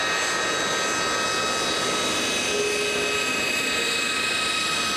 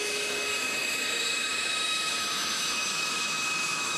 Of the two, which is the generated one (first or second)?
second